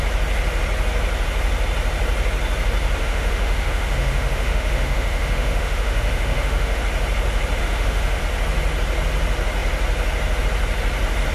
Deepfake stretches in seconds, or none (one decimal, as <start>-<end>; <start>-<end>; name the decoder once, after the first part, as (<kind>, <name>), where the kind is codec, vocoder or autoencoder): 3.0-6.8 (autoencoder, DAC-VAE); 7.6-8.2